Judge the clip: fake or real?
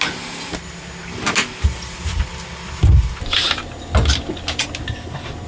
real